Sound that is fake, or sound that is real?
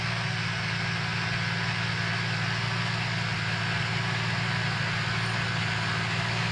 real